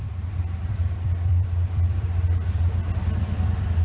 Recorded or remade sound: remade